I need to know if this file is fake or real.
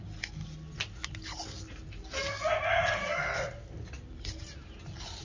real